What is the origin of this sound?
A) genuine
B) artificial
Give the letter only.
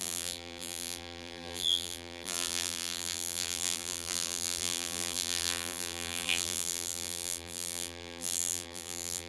B